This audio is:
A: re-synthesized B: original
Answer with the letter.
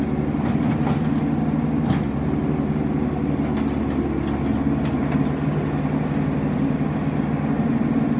B